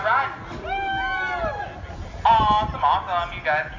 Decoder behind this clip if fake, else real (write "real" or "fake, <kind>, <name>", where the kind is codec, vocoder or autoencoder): real